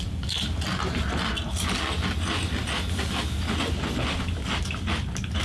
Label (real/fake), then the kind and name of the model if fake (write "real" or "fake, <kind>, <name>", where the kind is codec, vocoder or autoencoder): real